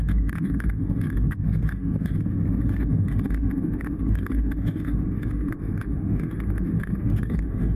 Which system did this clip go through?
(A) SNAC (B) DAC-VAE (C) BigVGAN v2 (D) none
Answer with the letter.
B